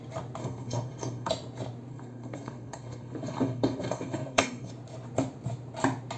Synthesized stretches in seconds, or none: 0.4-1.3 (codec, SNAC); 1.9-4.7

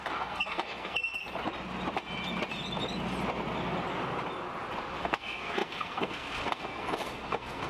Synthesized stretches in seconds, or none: 0.0-1.2 (codec, SNAC); 5.0-7.7

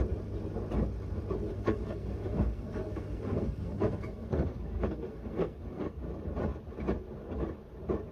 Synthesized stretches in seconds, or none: 1.5-6.0 (codec, SNAC)